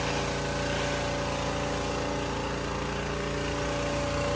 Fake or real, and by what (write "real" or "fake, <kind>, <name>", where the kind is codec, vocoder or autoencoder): real